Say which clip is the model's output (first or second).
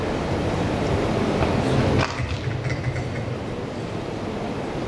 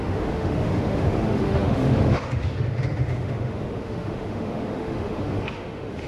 second